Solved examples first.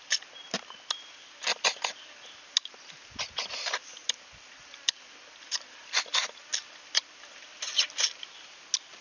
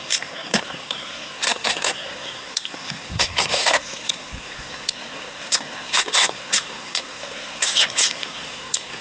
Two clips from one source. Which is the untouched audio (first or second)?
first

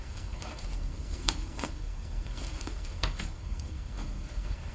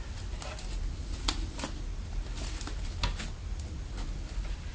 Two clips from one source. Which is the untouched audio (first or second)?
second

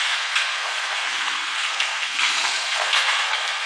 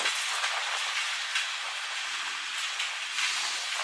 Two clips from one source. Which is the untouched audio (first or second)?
second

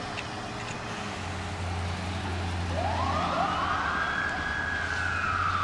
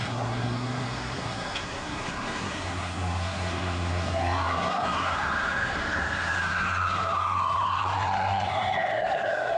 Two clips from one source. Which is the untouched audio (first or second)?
first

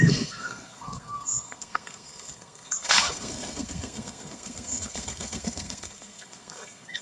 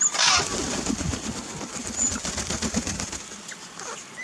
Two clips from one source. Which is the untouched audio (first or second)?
second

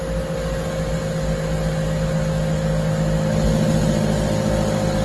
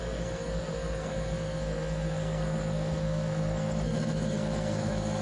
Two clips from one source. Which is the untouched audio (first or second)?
first